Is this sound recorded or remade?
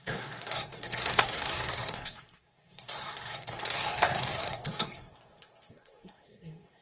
remade